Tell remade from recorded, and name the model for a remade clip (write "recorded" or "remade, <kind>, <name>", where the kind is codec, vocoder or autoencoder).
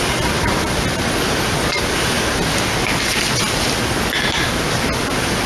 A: recorded